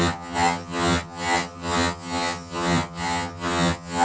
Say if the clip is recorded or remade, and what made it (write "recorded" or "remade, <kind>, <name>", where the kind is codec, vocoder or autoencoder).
remade, vocoder, HiFi-GAN